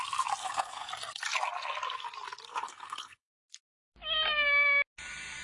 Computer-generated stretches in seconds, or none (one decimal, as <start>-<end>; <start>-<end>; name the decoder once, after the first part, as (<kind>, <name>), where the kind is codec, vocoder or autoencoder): 0.4-0.9 (codec, HILCodec); 2.5-3.3